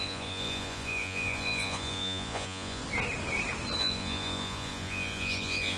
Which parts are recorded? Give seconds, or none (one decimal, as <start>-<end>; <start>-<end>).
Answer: 2.8-3.8